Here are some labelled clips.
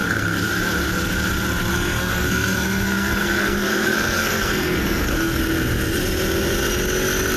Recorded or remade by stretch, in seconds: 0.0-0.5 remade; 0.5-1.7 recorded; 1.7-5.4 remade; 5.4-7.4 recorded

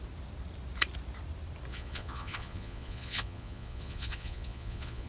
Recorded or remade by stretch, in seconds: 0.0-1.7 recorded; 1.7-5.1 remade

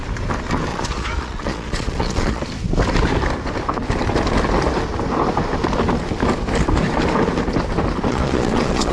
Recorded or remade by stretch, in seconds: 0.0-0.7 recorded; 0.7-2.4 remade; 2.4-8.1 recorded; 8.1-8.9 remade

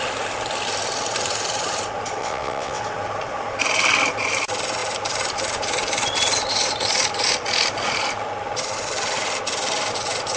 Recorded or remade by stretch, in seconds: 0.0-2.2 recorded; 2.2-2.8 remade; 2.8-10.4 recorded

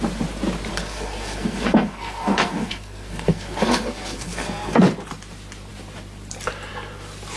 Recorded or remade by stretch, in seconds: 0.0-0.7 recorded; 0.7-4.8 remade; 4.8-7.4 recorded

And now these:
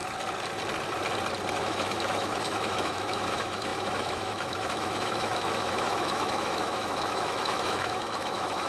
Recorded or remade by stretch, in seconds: 0.0-1.5 recorded; 1.5-8.7 remade